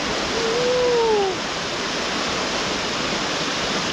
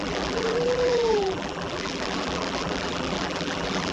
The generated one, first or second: second